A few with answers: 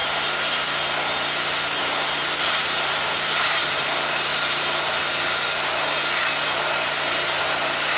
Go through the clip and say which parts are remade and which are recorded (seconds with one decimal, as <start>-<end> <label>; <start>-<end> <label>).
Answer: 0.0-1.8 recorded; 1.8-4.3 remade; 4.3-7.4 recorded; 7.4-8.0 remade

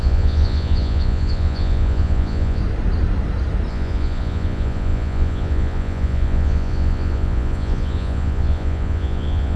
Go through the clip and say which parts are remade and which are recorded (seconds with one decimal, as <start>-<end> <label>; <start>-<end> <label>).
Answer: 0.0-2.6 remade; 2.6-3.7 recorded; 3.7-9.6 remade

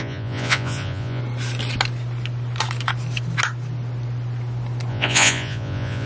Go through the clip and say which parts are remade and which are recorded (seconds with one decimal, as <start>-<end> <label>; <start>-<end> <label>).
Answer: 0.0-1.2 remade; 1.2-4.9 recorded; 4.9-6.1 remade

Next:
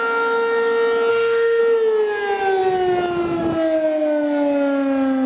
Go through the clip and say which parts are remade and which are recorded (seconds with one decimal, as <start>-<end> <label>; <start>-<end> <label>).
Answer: 0.0-1.1 recorded; 1.1-1.6 remade; 1.6-5.3 recorded

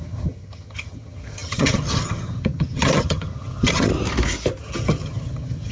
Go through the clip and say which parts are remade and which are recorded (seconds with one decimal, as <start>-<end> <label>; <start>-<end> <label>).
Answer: 0.0-3.9 remade; 3.9-4.6 recorded; 4.6-5.7 remade

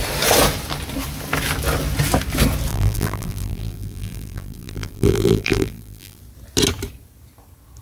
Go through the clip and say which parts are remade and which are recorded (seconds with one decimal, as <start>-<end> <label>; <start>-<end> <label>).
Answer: 0.0-2.7 recorded; 2.7-6.2 remade; 6.2-7.8 recorded